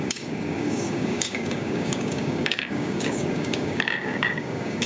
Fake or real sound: fake